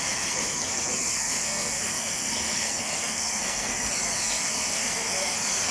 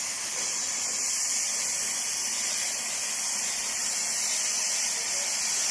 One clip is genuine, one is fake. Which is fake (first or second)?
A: first